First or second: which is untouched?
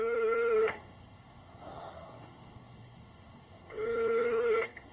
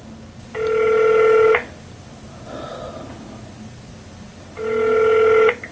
second